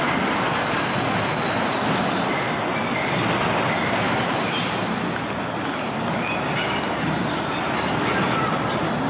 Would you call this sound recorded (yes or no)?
yes